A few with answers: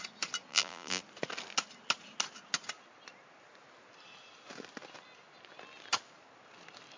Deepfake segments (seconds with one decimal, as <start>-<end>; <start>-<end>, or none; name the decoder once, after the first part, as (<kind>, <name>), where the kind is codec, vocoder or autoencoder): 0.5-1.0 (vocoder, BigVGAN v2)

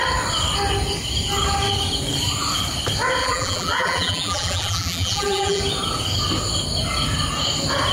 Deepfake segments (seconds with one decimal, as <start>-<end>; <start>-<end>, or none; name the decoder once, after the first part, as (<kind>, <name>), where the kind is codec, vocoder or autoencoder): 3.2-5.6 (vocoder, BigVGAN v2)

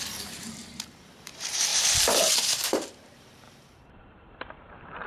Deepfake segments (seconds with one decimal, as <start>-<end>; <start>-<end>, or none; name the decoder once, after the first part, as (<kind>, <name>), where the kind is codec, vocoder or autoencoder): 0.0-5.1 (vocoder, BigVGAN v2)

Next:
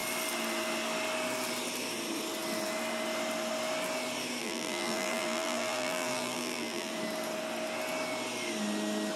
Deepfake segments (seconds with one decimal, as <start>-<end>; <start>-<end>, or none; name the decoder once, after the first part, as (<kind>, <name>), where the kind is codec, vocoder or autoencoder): 4.4-6.9 (vocoder, BigVGAN v2)

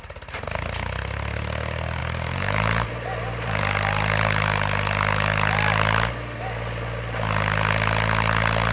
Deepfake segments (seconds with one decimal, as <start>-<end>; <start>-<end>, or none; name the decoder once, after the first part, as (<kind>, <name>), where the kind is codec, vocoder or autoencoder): 2.0-3.6 (vocoder, BigVGAN v2)

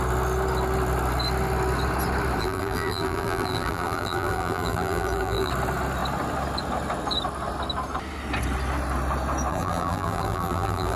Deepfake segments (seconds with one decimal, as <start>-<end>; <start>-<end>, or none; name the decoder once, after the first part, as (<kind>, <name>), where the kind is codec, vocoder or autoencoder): 2.4-5.5 (vocoder, BigVGAN v2); 9.5-11.0

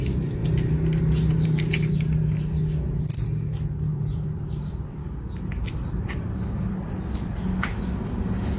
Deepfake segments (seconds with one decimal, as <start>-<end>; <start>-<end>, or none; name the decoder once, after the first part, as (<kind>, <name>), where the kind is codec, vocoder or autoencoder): 3.9-7.8 (vocoder, BigVGAN v2)